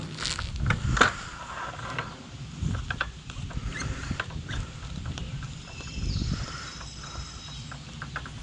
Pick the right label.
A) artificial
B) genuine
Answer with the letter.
A